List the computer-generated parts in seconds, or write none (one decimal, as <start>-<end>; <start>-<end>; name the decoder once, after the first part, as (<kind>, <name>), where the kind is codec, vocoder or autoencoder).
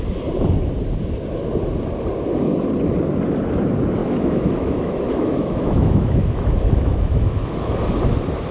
4.0-7.7 (autoencoder, DAC-VAE)